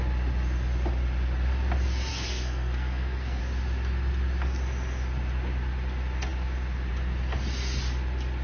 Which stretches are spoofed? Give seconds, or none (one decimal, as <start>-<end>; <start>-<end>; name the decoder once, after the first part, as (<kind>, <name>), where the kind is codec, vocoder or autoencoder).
2.1-3.4 (codec, SNAC)